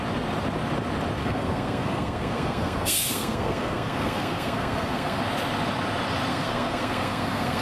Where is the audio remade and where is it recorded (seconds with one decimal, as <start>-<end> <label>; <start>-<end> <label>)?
0.0-1.2 recorded; 1.2-5.2 remade; 5.2-6.3 recorded; 6.3-7.6 remade